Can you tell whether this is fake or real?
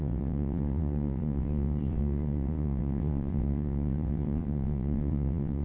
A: fake